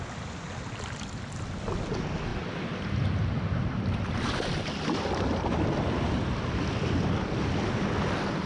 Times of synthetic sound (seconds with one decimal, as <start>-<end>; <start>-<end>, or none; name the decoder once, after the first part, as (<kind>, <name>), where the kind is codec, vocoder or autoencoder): none